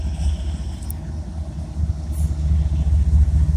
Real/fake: real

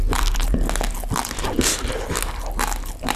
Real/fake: real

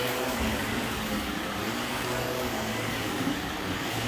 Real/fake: fake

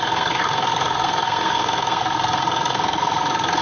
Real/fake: fake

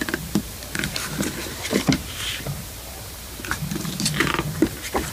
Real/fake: fake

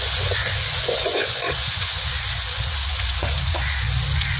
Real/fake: fake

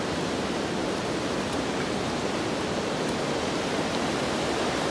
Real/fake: real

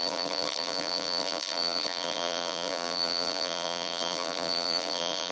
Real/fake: fake